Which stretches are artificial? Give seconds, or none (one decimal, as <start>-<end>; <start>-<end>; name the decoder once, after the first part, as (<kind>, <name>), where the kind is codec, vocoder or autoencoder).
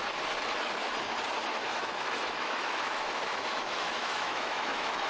1.6-5.1 (autoencoder, DAC-VAE)